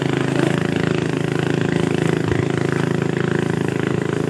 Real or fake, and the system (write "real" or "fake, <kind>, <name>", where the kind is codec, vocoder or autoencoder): real